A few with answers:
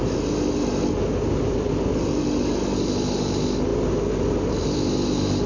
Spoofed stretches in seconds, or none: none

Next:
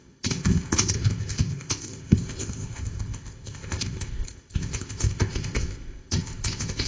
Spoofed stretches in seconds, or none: 0.0-6.9 (codec, ZipCodec)

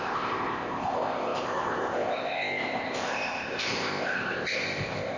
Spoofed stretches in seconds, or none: 0.0-5.2 (codec, ZipCodec)